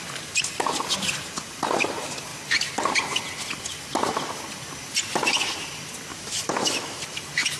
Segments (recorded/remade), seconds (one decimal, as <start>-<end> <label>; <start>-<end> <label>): 0.0-6.1 recorded; 6.1-7.0 remade; 7.0-7.6 recorded